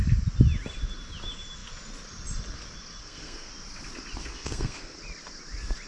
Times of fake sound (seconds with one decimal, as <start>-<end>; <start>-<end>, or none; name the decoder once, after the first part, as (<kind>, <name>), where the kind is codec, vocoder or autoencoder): 3.0-3.5 (codec, SNAC); 4.2-5.0